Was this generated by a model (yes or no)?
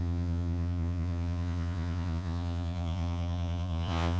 yes